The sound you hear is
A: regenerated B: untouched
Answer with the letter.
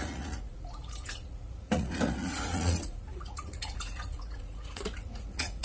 A